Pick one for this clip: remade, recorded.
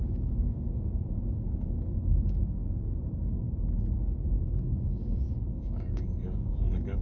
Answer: remade